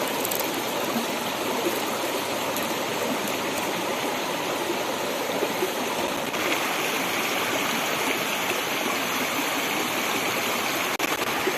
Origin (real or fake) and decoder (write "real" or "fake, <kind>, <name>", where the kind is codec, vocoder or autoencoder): real